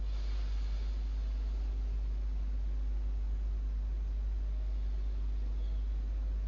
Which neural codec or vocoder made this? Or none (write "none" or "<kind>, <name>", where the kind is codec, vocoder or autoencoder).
none